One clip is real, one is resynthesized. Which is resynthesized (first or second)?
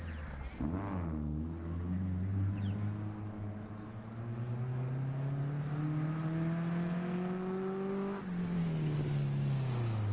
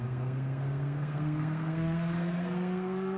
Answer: second